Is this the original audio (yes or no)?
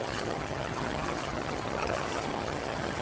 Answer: no